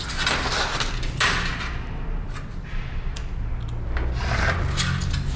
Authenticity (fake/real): real